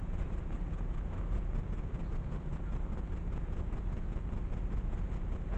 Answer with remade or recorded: remade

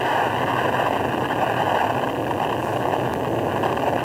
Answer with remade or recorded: remade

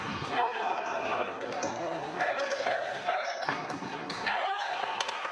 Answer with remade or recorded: remade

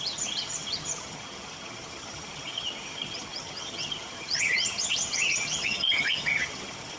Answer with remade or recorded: remade